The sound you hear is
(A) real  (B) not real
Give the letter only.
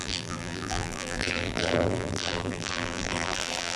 B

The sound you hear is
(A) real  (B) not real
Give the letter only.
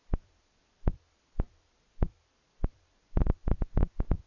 A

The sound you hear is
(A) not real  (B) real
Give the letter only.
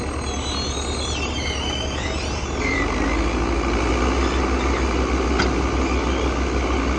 B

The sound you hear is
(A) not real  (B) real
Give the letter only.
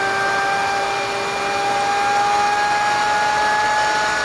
B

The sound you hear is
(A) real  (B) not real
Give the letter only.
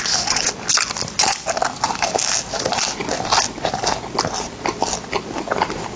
A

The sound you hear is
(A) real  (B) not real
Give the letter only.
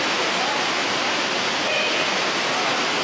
B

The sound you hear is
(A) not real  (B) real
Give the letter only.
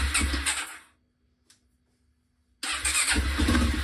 B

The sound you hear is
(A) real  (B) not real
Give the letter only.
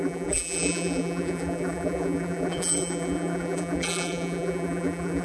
B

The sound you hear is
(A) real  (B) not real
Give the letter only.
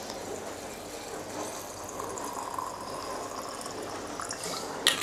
A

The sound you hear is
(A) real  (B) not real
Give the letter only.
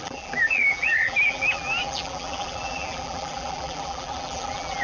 B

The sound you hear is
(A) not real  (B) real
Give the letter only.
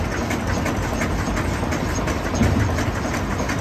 B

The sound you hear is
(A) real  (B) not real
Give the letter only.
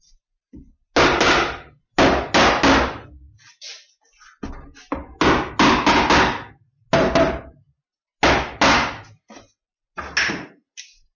A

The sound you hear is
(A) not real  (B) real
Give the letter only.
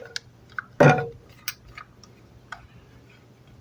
B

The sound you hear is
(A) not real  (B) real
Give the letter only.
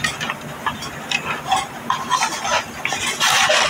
B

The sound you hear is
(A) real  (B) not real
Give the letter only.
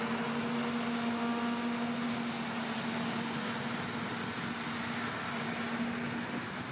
A